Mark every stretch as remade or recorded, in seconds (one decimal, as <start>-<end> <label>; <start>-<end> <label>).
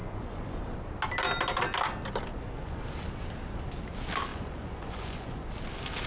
0.0-0.6 remade; 0.6-2.3 recorded; 2.3-2.8 remade; 2.8-4.3 recorded; 4.3-5.5 remade; 5.5-6.1 recorded